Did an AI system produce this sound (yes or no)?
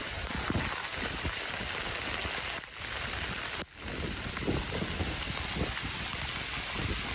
no